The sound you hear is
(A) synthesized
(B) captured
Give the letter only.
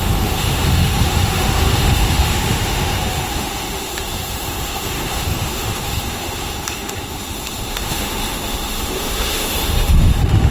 A